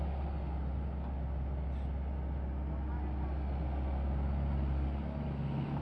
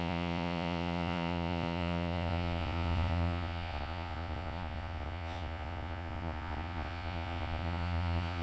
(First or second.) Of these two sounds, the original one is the first